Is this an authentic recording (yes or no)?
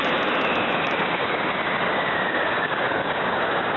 no